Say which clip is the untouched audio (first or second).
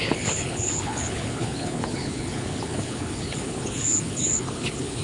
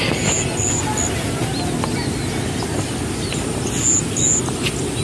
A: second